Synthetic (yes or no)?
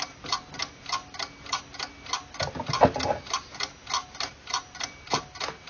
no